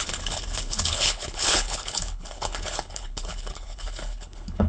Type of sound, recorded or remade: remade